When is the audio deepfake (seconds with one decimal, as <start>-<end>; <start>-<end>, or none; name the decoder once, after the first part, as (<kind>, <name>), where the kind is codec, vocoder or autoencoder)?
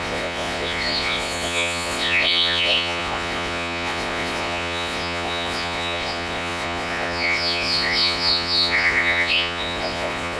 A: 0.0-10.4 (vocoder, Vocos)